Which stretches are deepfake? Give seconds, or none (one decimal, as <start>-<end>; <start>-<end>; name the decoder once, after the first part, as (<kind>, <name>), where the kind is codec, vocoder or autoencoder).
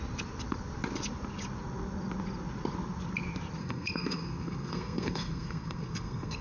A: 3.6-6.4 (codec, SNAC)